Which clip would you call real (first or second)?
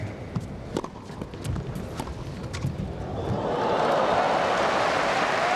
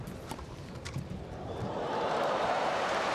first